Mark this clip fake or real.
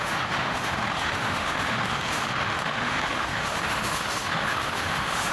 fake